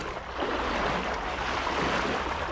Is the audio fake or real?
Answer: real